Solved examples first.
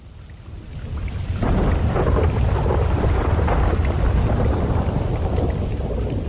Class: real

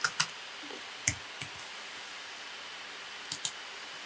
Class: real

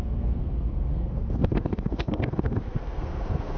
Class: fake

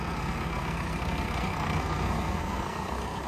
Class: fake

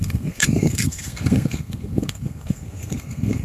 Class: fake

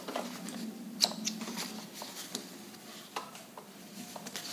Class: real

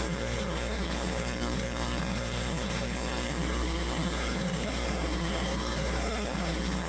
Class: fake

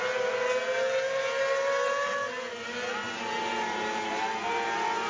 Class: real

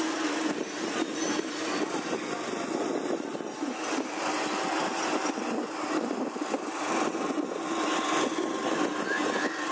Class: real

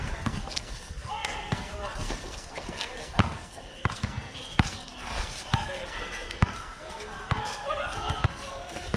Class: fake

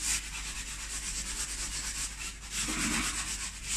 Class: real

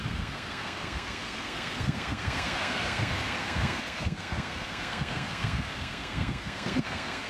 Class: fake